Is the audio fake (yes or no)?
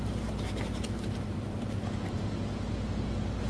no